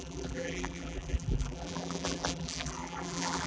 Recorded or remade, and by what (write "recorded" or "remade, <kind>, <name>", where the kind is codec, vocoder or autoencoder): remade, vocoder, BigVGAN v2